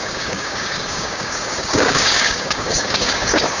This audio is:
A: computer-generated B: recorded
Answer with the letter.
A